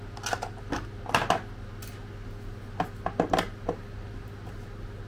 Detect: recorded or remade recorded